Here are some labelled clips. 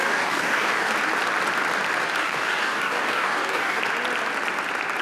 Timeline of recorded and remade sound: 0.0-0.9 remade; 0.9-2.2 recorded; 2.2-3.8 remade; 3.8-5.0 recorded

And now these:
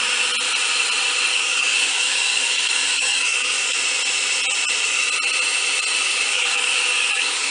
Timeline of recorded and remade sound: 0.0-1.3 recorded; 1.3-3.8 remade; 3.8-6.0 recorded; 6.0-7.5 remade

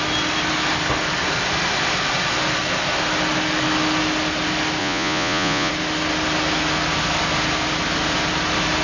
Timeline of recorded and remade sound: 0.0-4.8 recorded; 4.8-5.7 remade; 5.7-8.8 recorded

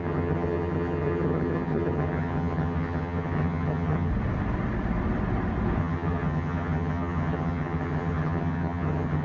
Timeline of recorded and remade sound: 0.0-4.1 remade; 4.1-5.8 recorded; 5.8-9.2 remade

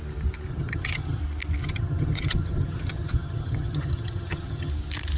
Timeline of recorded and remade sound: 0.0-0.5 recorded; 0.5-1.2 remade; 1.2-1.6 recorded; 1.6-4.7 remade; 4.7-5.2 recorded

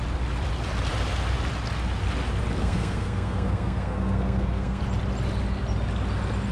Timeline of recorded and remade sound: 0.0-2.6 recorded; 2.6-4.8 remade; 4.8-6.5 recorded